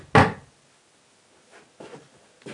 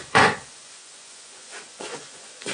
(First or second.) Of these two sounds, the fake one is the second